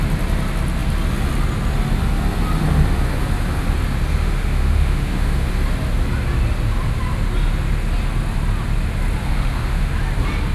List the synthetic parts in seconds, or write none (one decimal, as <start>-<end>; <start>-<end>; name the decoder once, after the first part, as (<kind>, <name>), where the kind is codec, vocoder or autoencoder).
4.2-5.5 (autoencoder, DAC-VAE); 9.2-9.9